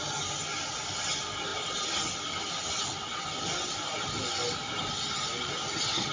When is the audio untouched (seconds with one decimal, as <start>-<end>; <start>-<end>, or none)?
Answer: 0.0-6.1